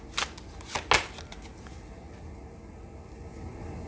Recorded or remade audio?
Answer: recorded